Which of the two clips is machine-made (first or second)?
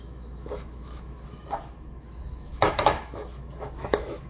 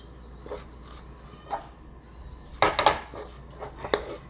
first